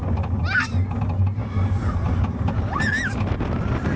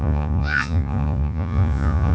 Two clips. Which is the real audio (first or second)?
first